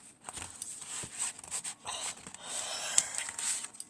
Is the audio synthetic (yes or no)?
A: no